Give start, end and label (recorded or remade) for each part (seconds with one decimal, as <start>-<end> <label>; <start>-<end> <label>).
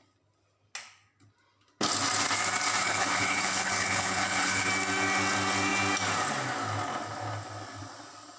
0.0-2.8 recorded; 2.8-4.7 remade; 4.7-8.4 recorded